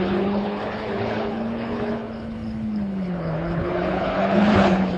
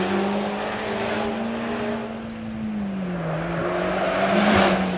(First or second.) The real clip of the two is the second